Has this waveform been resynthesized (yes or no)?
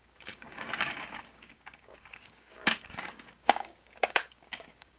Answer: yes